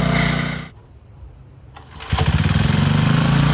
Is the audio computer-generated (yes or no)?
no